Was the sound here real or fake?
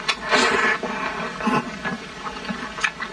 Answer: real